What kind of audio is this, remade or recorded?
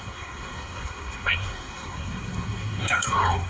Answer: remade